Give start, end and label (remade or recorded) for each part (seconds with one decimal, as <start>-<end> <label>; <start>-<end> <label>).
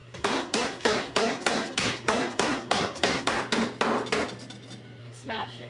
0.0-3.4 remade; 3.4-5.0 recorded; 5.0-5.7 remade